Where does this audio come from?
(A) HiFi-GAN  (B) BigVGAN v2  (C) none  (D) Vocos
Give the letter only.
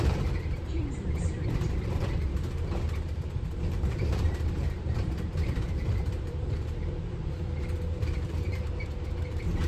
B